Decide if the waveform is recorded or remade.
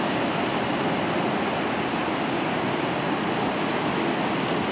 recorded